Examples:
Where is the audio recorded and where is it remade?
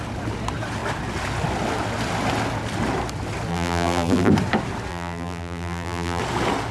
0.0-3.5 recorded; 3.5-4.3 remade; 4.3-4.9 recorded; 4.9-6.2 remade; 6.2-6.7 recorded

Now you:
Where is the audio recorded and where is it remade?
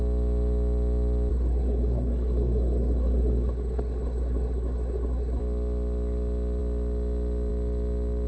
0.0-1.3 recorded; 1.3-5.4 remade; 5.4-8.3 recorded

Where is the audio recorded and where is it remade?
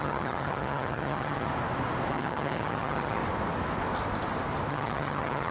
0.0-1.5 remade; 1.5-2.1 recorded; 2.1-3.2 remade; 3.2-4.7 recorded; 4.7-5.5 remade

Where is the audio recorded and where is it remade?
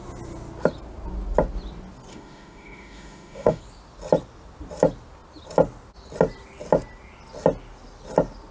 0.0-2.1 recorded; 2.1-3.6 remade; 3.6-8.5 recorded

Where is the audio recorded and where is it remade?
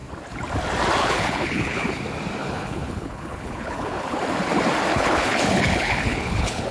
0.0-1.0 recorded; 1.0-2.0 remade; 2.0-2.4 recorded; 2.4-4.2 remade; 4.2-4.9 recorded; 4.9-6.7 remade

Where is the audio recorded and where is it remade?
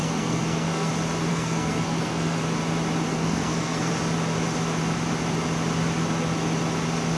0.0-0.9 remade; 0.9-1.3 recorded; 1.3-2.4 remade; 2.4-3.1 recorded; 3.1-3.9 remade; 3.9-7.2 recorded